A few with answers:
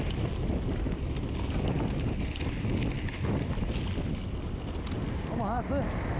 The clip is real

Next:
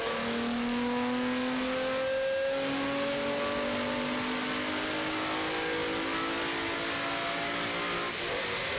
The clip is real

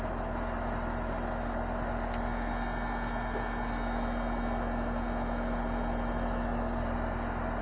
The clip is real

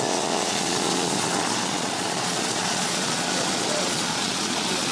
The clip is fake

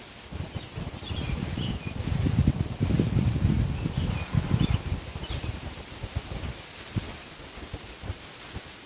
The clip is real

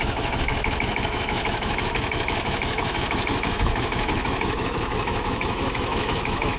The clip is fake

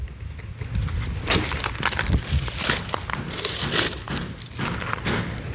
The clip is real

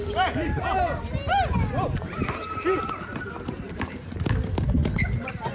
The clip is fake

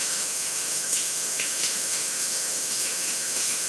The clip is fake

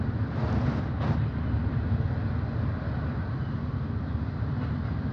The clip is real